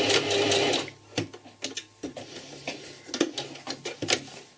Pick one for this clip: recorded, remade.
recorded